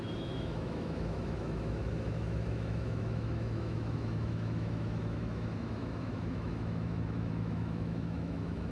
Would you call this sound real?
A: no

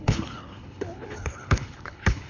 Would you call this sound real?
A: no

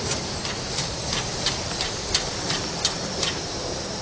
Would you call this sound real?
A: yes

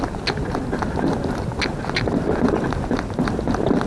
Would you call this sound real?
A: yes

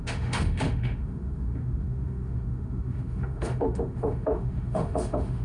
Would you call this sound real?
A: no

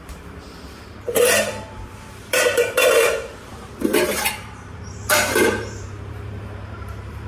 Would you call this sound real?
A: no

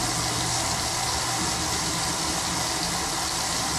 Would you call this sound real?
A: yes